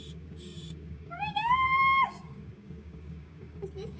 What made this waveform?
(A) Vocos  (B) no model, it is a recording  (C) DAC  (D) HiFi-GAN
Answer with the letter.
C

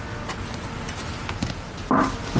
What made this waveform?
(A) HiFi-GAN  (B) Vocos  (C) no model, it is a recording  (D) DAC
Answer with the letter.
C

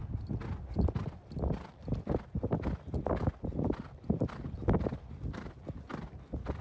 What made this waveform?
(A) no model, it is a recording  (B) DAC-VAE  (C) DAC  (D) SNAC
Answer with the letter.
A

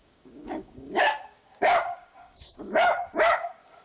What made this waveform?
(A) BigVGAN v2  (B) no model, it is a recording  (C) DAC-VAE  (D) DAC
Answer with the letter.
D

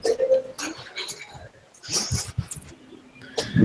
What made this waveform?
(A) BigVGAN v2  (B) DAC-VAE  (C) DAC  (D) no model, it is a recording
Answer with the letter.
D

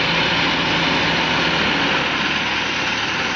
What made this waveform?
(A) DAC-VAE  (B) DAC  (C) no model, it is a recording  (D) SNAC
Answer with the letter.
C